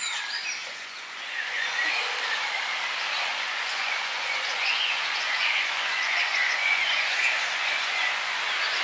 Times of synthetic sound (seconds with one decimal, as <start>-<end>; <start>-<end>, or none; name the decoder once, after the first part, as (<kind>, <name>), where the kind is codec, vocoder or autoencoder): 0.6-1.9 (vocoder, Vocos); 3.3-8.4